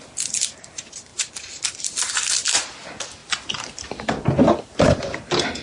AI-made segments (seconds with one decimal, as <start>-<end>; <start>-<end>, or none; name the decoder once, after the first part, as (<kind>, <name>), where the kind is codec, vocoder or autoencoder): 3.2-4.0 (vocoder, BigVGAN v2)